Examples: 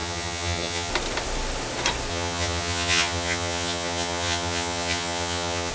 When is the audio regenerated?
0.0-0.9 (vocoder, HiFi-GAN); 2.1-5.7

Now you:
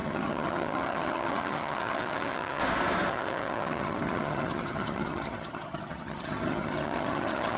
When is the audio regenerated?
0.0-2.6 (vocoder, HiFi-GAN); 3.1-7.6